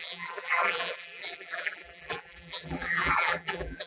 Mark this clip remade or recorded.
remade